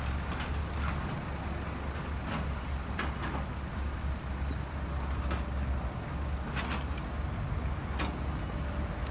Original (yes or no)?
yes